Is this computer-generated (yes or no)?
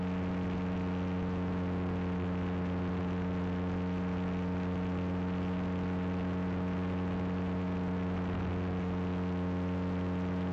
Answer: no